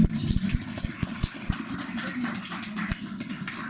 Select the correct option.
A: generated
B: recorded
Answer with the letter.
B